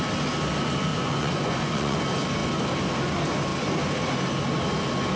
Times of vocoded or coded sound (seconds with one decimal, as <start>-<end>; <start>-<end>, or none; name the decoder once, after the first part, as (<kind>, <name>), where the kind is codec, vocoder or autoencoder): 0.9-2.0 (vocoder, Vocos)